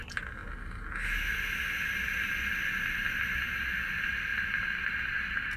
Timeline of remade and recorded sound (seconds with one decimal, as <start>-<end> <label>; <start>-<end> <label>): 0.0-4.3 recorded; 4.3-5.6 remade